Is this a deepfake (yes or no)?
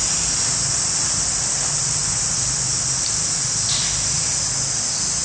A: no